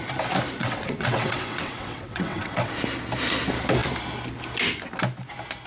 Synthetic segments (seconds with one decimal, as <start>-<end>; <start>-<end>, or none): 0.6-2.7